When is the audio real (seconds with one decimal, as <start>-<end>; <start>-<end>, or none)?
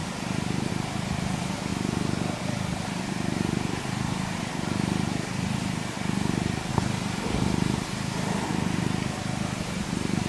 0.0-10.3